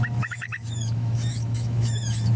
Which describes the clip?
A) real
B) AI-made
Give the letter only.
B